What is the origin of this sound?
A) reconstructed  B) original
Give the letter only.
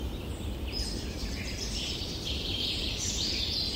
A